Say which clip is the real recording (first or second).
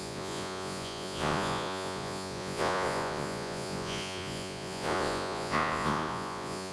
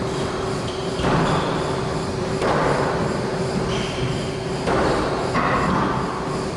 second